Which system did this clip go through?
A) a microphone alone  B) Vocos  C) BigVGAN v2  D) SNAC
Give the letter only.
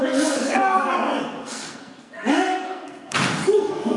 D